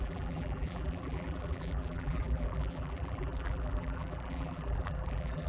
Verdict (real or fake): fake